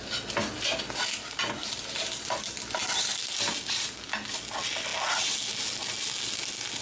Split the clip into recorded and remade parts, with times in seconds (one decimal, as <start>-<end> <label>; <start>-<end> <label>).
0.0-1.6 recorded; 1.6-3.5 remade; 3.5-6.8 recorded